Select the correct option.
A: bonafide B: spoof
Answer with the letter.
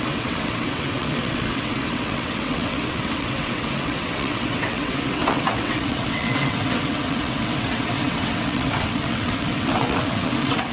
B